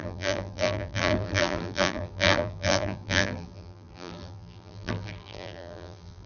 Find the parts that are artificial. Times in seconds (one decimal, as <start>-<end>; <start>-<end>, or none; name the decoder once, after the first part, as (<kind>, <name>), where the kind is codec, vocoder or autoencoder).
0.0-6.3 (vocoder, BigVGAN v2)